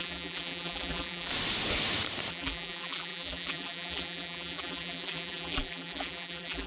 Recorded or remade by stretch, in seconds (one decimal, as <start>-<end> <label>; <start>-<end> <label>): 0.0-1.3 remade; 1.3-2.3 recorded; 2.3-6.7 remade